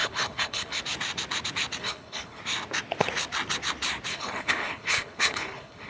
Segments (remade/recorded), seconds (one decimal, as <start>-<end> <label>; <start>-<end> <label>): 0.0-0.8 remade; 0.8-1.8 recorded; 1.8-2.4 remade; 2.4-4.1 recorded; 4.1-5.9 remade